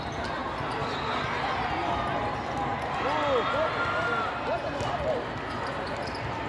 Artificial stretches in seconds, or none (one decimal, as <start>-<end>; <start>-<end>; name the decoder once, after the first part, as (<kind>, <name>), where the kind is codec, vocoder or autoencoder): none